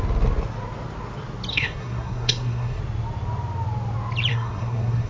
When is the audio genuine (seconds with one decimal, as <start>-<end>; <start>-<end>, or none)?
0.0-1.5; 2.8-4.3